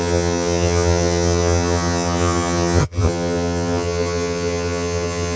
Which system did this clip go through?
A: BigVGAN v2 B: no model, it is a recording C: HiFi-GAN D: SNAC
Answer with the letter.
C